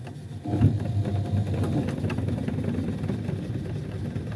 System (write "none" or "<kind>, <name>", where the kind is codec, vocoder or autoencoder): none